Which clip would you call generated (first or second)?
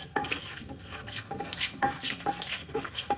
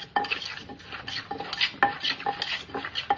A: first